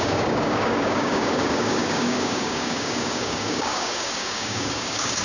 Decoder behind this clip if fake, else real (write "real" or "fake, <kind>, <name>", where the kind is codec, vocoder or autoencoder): fake, codec, DAC